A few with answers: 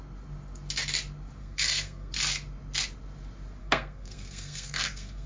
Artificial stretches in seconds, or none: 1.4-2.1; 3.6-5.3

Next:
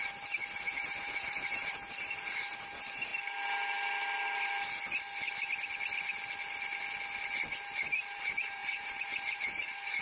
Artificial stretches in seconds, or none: 0.0-3.1; 7.5-10.0

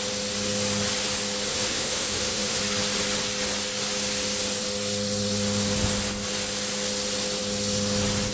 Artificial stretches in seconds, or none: 1.5-2.6